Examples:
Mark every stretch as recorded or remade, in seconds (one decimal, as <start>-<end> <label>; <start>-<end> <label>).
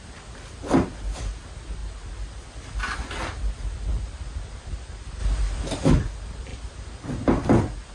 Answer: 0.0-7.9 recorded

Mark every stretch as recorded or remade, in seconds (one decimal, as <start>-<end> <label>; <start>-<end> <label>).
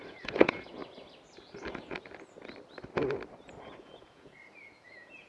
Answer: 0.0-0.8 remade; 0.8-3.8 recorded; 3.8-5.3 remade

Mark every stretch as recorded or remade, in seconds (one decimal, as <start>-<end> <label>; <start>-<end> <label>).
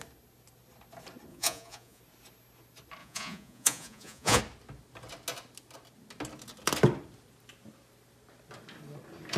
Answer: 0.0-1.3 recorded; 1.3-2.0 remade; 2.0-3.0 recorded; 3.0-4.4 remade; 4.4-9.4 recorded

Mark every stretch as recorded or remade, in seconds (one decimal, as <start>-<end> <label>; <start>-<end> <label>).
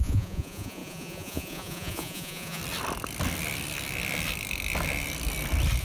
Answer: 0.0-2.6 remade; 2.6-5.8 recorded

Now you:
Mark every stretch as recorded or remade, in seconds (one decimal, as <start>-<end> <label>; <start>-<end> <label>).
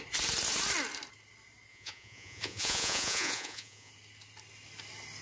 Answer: 0.0-1.7 recorded; 1.7-3.9 remade; 3.9-5.2 recorded